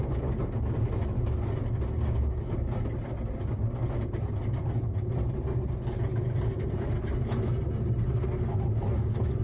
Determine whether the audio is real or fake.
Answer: real